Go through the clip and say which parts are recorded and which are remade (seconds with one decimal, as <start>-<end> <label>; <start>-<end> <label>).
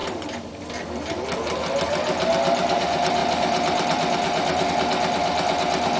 0.0-0.6 remade; 0.6-3.2 recorded; 3.2-4.7 remade; 4.7-6.0 recorded